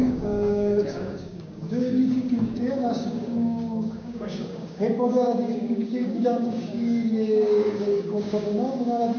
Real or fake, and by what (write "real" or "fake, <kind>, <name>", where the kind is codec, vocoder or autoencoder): fake, codec, DAC